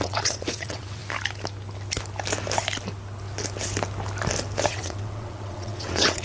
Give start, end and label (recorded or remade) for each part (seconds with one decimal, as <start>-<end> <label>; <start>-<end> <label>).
0.0-1.0 remade; 1.0-4.7 recorded; 4.7-6.2 remade